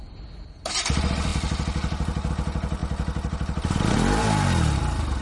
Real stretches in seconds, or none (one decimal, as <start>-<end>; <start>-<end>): 0.0-5.2